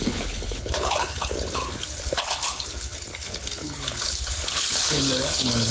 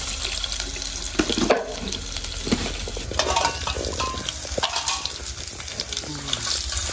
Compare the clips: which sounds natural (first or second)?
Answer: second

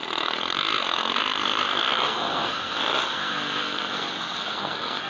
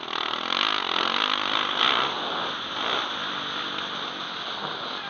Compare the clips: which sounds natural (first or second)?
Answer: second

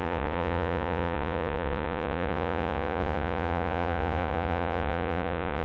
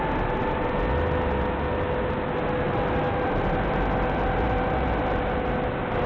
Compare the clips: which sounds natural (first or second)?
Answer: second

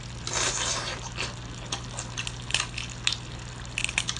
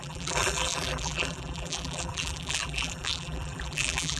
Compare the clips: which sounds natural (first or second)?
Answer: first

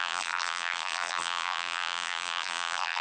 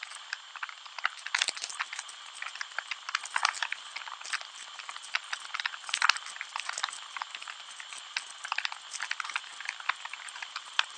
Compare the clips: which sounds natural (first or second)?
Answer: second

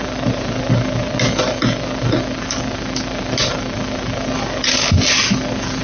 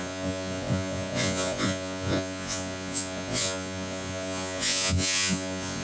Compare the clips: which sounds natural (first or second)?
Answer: first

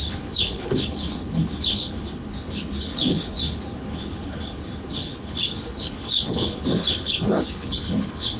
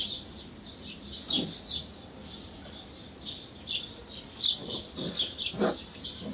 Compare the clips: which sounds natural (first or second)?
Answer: second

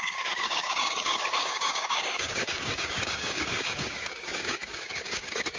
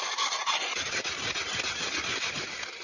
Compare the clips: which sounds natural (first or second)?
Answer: second